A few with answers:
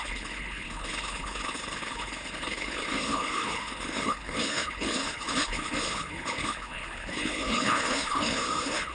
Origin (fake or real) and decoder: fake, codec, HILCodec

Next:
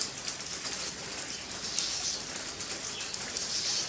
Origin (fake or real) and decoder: real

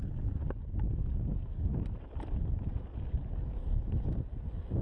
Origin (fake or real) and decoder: real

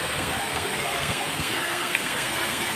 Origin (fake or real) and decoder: fake, codec, SNAC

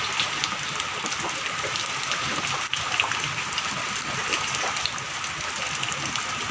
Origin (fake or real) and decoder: real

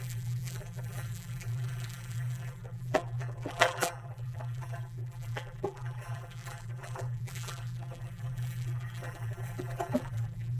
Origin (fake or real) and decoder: fake, vocoder, BigVGAN v2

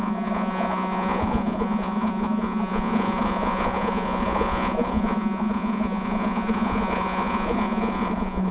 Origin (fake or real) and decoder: fake, vocoder, Vocos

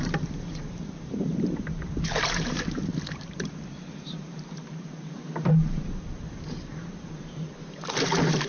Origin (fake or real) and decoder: fake, vocoder, BigVGAN v2